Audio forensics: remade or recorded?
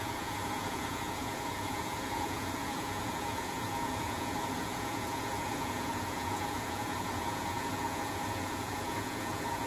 remade